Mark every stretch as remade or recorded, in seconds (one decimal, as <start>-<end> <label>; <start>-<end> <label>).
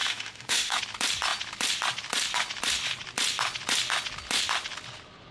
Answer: 0.0-0.8 remade; 0.8-5.3 recorded